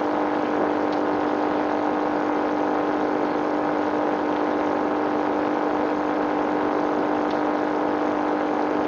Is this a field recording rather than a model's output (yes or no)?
yes